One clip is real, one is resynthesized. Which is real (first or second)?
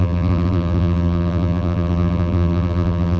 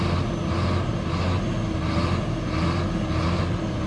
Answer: second